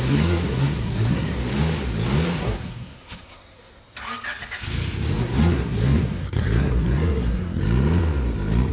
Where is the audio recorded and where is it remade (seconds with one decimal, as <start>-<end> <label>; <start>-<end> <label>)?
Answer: 0.0-1.4 remade; 1.4-2.4 recorded; 2.4-3.8 remade; 3.8-5.2 recorded; 5.2-7.6 remade; 7.6-8.7 recorded